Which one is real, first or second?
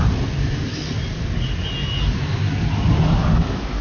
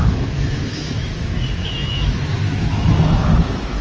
first